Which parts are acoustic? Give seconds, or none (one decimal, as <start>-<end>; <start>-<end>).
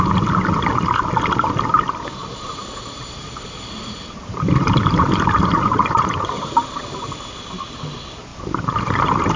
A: 0.0-2.2; 6.8-8.3